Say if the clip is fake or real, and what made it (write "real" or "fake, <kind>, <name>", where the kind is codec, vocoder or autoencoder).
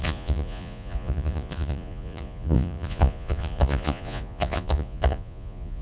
fake, vocoder, Vocos